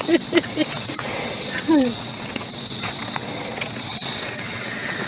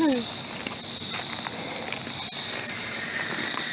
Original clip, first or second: second